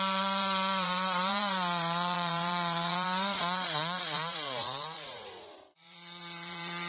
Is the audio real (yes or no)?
no